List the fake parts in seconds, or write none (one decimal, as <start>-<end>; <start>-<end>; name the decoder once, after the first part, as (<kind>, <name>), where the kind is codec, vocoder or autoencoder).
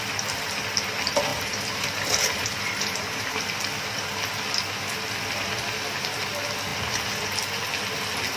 1.3-3.4 (vocoder, BigVGAN v2)